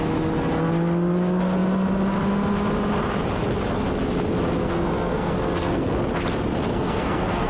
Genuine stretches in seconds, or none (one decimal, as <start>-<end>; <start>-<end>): 0.0-4.6; 5.9-6.7

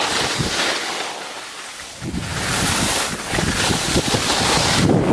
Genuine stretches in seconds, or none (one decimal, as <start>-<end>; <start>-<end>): 0.0-5.1

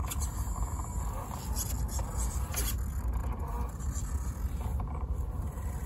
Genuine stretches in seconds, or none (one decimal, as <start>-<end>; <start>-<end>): 0.0-2.0; 2.5-3.2; 3.8-4.7; 5.4-5.9

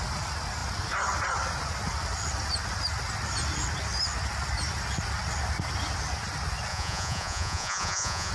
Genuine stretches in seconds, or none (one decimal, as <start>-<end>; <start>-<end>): 0.0-6.7

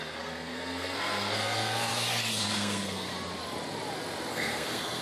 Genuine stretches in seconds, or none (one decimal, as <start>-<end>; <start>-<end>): 1.9-2.4; 3.1-4.3

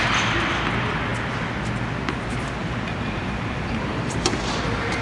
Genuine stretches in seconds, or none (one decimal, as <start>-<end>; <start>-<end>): 0.0-2.6; 4.4-5.0